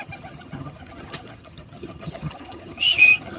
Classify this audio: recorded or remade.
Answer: remade